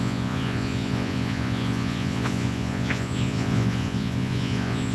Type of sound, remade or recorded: remade